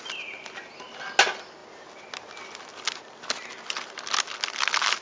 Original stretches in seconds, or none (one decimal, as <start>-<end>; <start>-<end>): 0.0-5.0